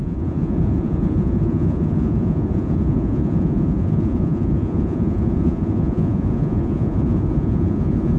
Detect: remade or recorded remade